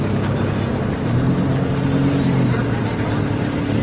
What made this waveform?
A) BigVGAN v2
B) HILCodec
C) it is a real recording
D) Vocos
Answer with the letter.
C